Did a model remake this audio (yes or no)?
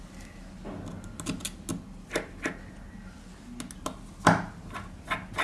no